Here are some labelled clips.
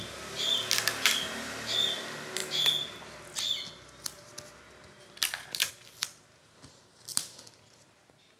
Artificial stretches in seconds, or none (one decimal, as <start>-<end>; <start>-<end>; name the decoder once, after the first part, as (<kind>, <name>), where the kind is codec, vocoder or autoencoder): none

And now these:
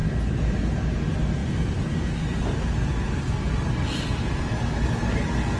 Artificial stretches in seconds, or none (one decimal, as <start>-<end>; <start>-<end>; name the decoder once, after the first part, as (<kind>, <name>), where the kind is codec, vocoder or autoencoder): 1.4-2.4 (vocoder, BigVGAN v2)

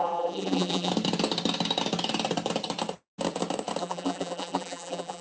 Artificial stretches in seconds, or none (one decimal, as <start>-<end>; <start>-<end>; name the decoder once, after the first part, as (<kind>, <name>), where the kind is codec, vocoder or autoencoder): 0.0-0.9 (vocoder, BigVGAN v2); 3.8-5.2

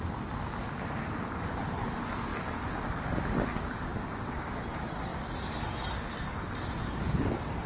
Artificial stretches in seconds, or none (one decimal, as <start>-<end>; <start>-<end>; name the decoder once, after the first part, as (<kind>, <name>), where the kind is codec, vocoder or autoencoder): 3.9-4.4 (vocoder, BigVGAN v2)